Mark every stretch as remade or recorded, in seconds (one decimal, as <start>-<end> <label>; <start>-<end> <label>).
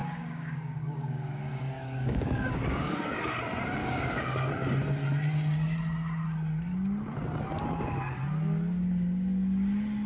0.0-3.3 remade; 3.3-3.8 recorded; 3.8-4.5 remade; 4.5-10.1 recorded